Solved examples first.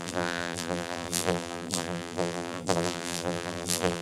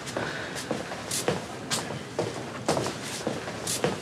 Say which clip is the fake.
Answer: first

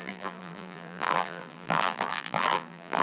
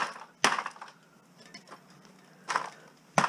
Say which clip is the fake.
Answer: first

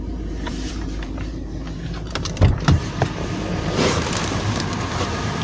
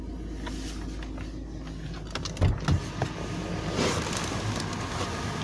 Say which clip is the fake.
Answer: first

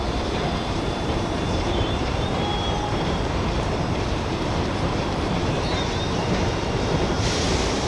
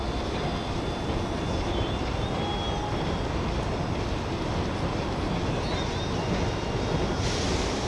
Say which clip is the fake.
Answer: first